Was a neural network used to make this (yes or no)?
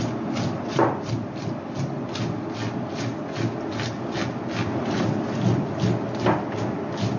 no